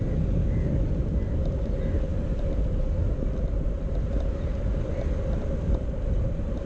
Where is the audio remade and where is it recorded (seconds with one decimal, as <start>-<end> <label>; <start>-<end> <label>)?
0.0-6.7 recorded